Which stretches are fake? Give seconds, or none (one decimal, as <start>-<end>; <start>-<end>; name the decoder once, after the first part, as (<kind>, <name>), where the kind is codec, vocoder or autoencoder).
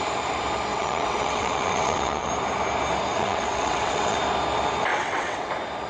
0.7-2.3 (vocoder, WaveNeXt); 3.1-4.2; 4.9-5.5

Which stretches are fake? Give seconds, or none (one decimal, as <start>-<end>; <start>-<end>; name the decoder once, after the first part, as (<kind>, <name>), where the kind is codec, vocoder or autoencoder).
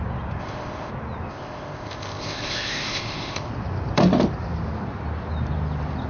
0.4-0.9 (codec, ZipCodec); 1.3-3.5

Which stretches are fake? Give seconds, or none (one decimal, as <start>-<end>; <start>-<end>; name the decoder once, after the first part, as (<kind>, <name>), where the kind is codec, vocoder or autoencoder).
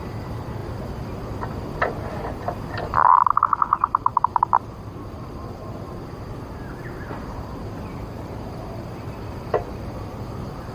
0.0-0.6 (vocoder, BigVGAN v2); 3.3-10.7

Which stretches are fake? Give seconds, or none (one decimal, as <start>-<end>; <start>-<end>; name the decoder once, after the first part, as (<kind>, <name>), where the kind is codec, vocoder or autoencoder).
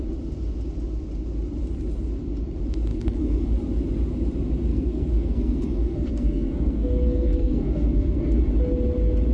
2.9-3.5 (codec, SNAC); 4.7-8.4